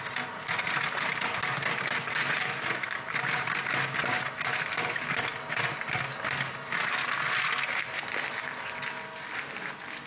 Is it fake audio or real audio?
real